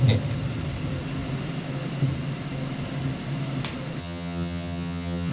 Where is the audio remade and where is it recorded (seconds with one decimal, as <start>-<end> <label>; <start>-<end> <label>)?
0.0-4.0 recorded; 4.0-5.3 remade